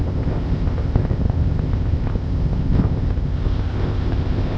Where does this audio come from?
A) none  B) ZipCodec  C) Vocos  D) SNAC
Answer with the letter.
B